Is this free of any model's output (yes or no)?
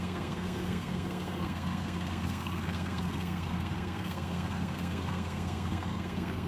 no